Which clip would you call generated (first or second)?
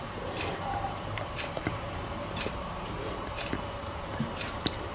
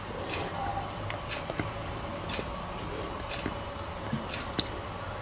first